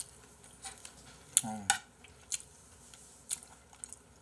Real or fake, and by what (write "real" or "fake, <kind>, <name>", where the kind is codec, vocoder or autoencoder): real